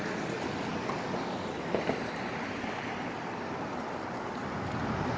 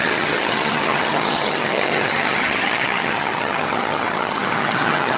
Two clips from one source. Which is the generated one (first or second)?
second